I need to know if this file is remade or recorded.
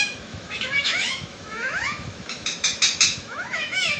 remade